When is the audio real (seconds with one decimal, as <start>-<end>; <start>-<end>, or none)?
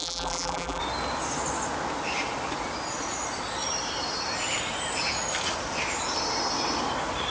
0.8-7.3